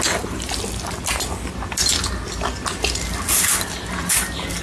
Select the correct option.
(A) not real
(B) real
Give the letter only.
B